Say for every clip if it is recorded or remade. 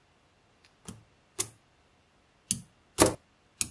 recorded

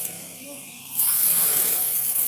remade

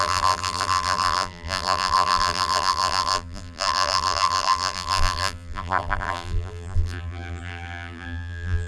remade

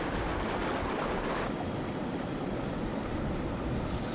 recorded